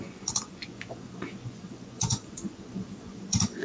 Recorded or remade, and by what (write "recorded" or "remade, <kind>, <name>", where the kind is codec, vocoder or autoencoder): remade, vocoder, Vocos